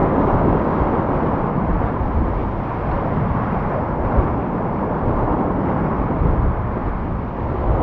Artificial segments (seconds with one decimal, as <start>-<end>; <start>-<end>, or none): 0.0-0.8